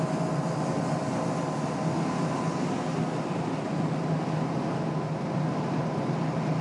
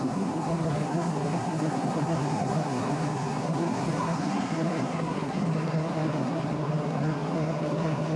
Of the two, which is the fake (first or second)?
second